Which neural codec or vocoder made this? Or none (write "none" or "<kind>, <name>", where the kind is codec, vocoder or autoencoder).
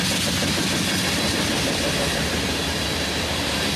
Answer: none